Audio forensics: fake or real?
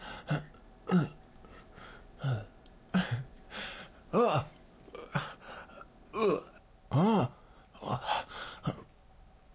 real